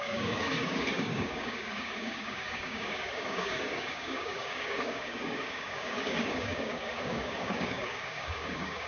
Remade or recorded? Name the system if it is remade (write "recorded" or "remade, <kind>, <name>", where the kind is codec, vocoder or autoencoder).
remade, codec, DAC